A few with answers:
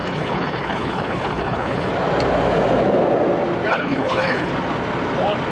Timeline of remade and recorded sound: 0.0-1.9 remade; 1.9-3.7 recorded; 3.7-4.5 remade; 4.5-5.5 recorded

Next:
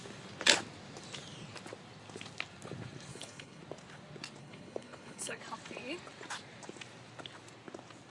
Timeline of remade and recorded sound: 0.0-3.1 recorded; 3.1-3.6 remade; 3.6-4.4 recorded; 4.4-5.4 remade; 5.4-8.1 recorded

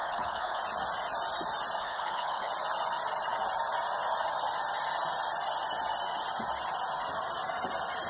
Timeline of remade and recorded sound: 0.0-0.6 remade; 0.6-1.8 recorded; 1.8-2.5 remade; 2.5-8.1 recorded